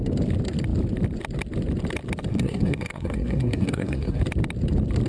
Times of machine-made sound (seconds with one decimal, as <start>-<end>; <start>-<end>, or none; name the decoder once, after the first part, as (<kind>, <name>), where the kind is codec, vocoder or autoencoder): 2.3-4.2 (codec, SNAC)